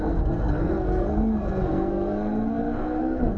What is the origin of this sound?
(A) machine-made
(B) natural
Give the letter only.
A